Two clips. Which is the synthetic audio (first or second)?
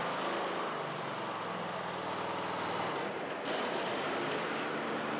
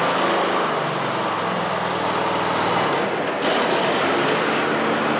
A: first